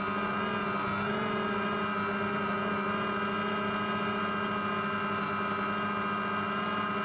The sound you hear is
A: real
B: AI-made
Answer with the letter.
A